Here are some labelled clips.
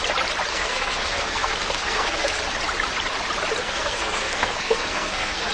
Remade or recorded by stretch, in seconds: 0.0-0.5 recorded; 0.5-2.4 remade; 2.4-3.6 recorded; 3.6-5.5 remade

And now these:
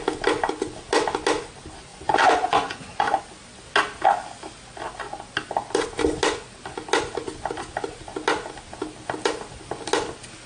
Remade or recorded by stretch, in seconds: 0.0-1.9 recorded; 1.9-3.2 remade; 3.2-10.5 recorded

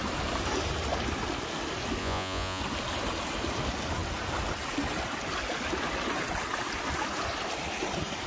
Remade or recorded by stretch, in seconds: 0.0-2.0 recorded; 2.0-2.6 remade; 2.6-8.3 recorded

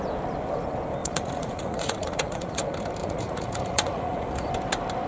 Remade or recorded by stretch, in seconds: 0.0-1.0 recorded; 1.0-2.6 remade; 2.6-3.0 recorded; 3.0-4.5 remade; 4.5-5.1 recorded